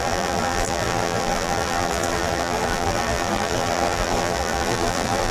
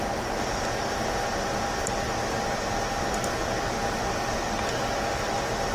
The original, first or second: second